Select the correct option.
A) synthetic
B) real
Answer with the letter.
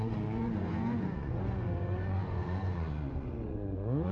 A